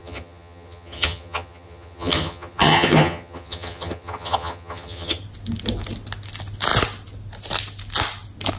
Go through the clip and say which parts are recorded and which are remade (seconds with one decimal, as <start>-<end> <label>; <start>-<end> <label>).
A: 0.0-5.2 remade; 5.2-8.6 recorded